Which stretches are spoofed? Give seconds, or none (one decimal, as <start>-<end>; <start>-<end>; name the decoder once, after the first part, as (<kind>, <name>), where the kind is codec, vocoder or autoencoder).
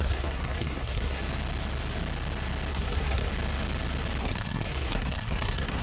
0.0-1.2 (codec, SNAC); 2.7-3.3; 4.2-5.8